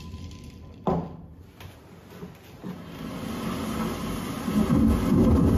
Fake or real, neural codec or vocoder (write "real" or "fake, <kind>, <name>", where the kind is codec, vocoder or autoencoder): real